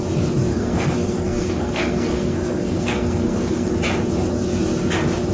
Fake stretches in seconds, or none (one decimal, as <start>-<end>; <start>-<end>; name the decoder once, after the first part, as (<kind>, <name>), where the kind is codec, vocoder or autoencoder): 0.5-3.7 (codec, SNAC)